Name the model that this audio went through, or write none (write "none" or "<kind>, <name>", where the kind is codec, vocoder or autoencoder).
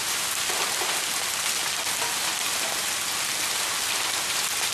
none